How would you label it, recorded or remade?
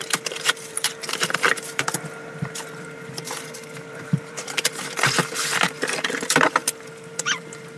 remade